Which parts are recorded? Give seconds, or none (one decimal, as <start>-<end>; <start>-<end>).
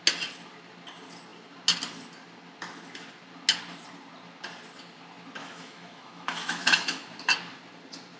0.0-5.4; 7.2-8.2